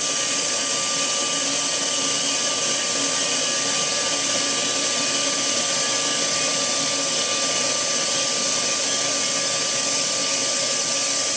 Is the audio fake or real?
real